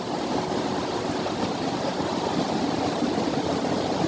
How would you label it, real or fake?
real